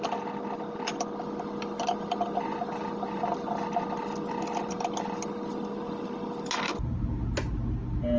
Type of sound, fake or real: real